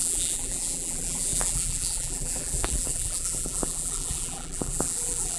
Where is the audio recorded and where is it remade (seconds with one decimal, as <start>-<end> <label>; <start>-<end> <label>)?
0.0-5.4 remade